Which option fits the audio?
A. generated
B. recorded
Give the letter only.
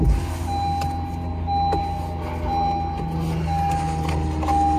B